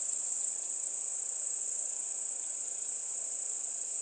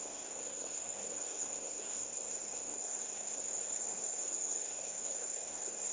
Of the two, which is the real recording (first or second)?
first